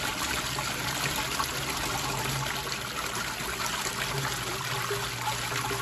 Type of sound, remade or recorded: recorded